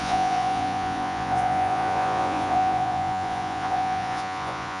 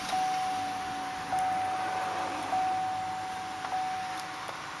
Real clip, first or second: second